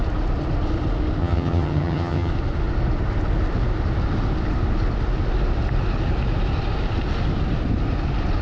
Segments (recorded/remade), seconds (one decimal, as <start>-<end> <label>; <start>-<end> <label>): 0.0-1.2 recorded; 1.2-2.3 remade; 2.3-8.4 recorded